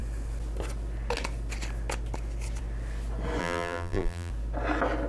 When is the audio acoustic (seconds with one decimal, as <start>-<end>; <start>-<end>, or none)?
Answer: 0.0-3.4; 4.3-5.1